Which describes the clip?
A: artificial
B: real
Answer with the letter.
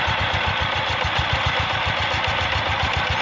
B